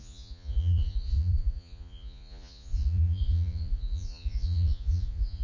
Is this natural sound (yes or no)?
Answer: no